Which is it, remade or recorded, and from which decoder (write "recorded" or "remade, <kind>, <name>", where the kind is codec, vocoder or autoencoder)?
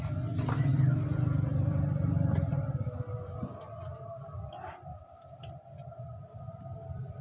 recorded